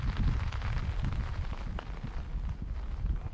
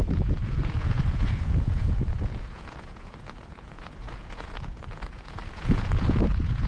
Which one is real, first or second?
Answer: first